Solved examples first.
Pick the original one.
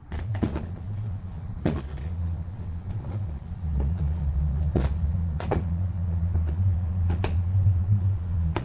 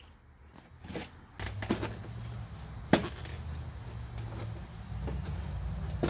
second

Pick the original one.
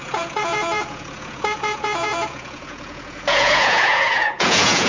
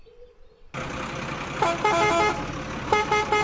second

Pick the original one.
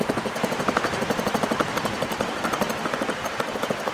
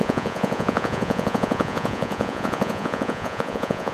first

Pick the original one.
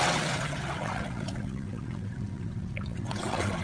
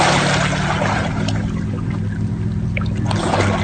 second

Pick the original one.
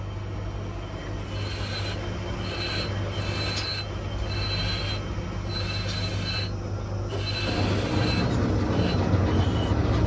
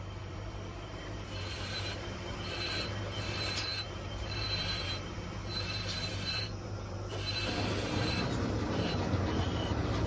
first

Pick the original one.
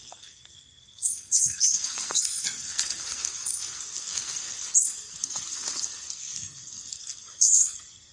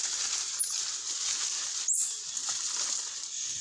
second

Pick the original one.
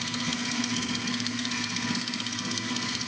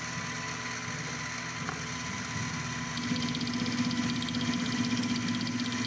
second